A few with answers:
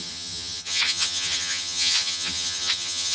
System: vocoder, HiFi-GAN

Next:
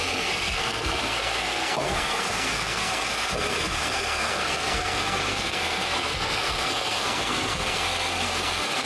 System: codec, SNAC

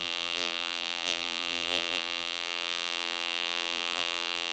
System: vocoder, BigVGAN v2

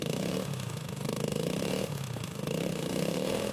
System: autoencoder, DAC-VAE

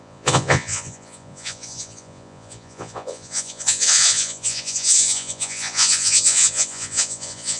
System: vocoder, Vocos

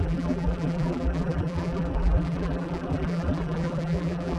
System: vocoder, BigVGAN v2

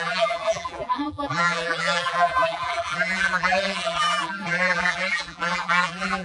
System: vocoder, BigVGAN v2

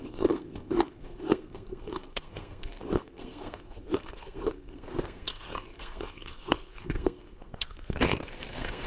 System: codec, SNAC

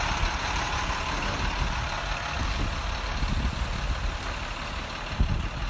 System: none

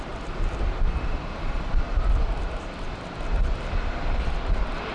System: vocoder, BigVGAN v2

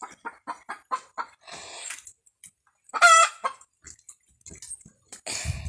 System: none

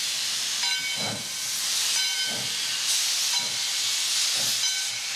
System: none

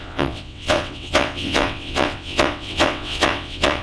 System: vocoder, WaveNeXt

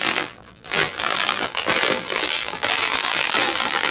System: vocoder, BigVGAN v2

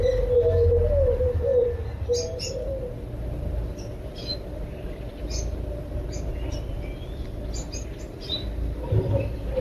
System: none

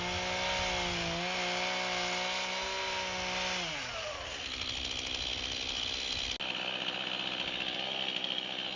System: none